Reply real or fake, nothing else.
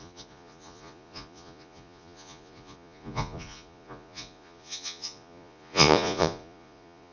fake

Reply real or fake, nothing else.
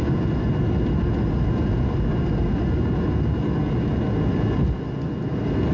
real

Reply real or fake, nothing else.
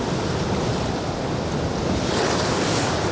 real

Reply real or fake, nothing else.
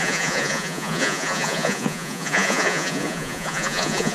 fake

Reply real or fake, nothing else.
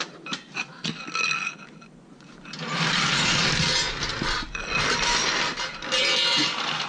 real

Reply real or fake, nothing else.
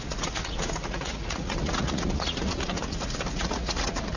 fake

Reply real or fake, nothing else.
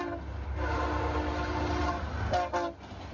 real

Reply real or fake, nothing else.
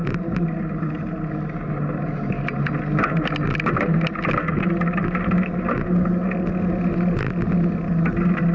real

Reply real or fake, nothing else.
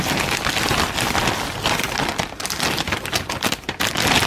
real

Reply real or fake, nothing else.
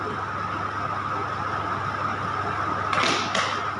real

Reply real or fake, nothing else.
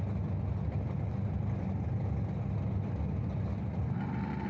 real